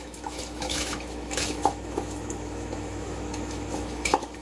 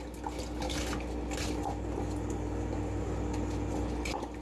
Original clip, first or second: second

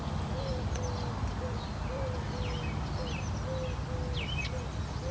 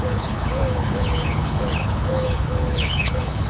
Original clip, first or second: first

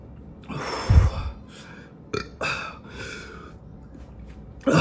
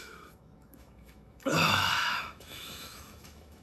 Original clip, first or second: first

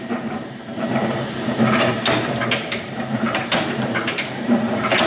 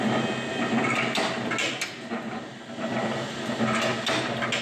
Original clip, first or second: second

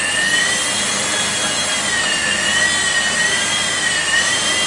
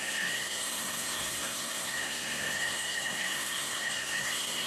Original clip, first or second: first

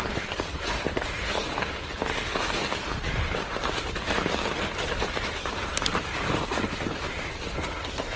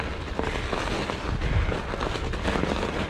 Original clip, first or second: second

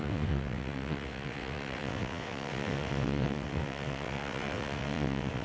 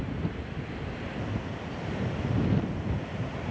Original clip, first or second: second